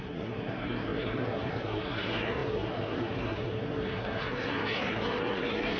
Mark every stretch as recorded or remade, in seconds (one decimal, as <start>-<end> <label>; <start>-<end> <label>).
0.0-5.8 remade